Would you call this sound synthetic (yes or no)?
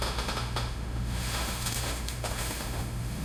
yes